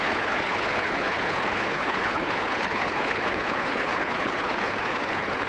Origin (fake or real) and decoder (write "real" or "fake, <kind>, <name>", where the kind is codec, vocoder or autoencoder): fake, codec, HILCodec